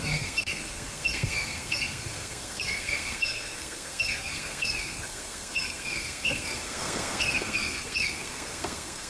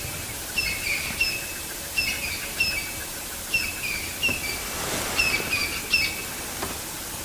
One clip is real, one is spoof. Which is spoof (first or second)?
first